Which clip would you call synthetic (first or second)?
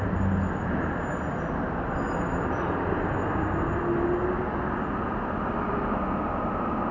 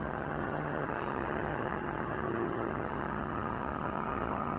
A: second